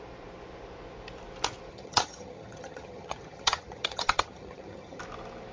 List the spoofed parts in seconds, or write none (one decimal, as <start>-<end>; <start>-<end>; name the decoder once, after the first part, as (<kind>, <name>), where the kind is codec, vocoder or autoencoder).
1.7-5.0 (vocoder, HiFi-GAN)